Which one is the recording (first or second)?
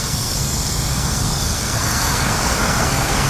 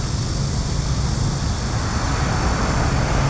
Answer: second